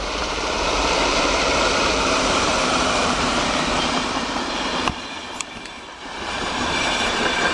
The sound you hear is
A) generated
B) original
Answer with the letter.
A